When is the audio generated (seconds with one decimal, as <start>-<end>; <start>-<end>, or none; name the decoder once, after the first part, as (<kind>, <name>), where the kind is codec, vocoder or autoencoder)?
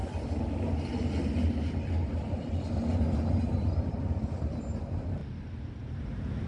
3.9-5.2 (vocoder, BigVGAN v2); 5.8-6.5